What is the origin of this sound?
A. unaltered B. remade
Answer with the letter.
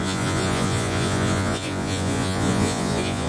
B